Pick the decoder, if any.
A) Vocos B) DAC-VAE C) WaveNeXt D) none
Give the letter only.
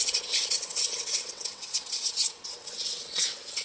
C